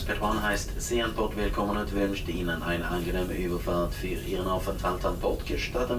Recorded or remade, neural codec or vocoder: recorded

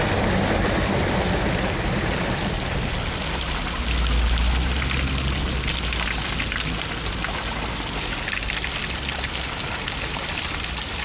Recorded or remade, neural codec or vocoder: recorded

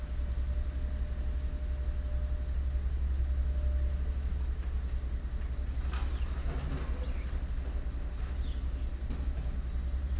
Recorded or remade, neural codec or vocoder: recorded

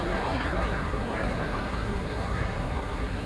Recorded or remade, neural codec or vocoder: remade, codec, SNAC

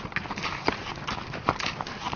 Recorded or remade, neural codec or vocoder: recorded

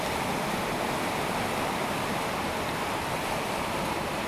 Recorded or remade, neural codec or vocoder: remade, vocoder, BigVGAN v2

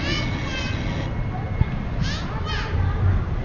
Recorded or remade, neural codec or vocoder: recorded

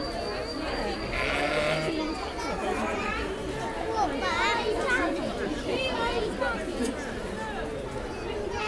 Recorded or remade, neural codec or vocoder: recorded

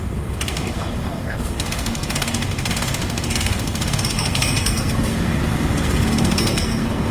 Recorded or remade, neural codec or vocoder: remade, codec, SNAC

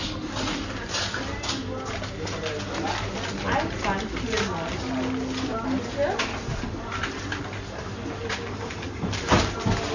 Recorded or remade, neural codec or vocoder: recorded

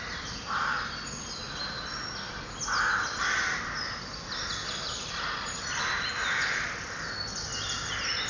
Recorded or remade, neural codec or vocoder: recorded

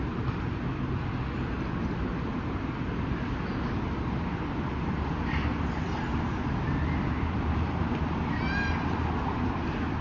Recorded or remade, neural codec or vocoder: recorded